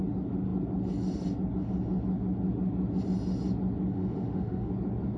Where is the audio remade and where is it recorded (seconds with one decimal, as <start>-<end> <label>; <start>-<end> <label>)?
0.0-3.9 recorded; 3.9-4.7 remade; 4.7-5.2 recorded